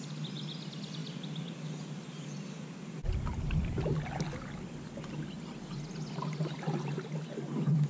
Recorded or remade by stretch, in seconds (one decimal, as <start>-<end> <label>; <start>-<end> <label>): 0.0-7.9 recorded